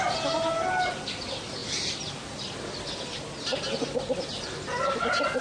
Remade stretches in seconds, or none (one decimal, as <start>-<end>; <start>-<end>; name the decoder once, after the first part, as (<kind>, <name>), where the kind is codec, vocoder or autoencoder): none